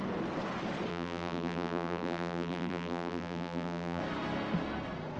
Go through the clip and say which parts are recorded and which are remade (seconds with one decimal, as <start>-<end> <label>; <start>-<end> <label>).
0.0-0.9 recorded; 0.9-4.0 remade; 4.0-5.2 recorded

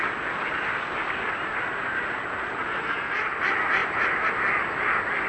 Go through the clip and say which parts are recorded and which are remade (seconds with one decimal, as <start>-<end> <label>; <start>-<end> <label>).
0.0-2.6 recorded; 2.6-3.3 remade; 3.3-3.8 recorded; 3.8-4.3 remade; 4.3-5.3 recorded

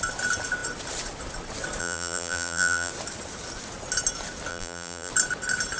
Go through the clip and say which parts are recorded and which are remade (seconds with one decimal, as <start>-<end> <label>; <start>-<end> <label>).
0.0-1.8 recorded; 1.8-2.9 remade; 2.9-4.5 recorded; 4.5-5.1 remade; 5.1-5.8 recorded

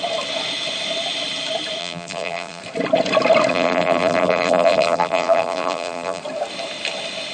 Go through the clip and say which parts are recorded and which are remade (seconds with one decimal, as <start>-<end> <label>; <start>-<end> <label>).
0.0-1.8 recorded; 1.8-2.6 remade; 2.6-3.5 recorded; 3.5-6.2 remade; 6.2-7.3 recorded

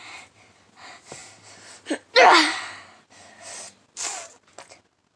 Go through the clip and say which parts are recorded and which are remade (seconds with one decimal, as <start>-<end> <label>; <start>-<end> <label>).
0.0-5.2 recorded